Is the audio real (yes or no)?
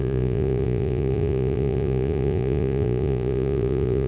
no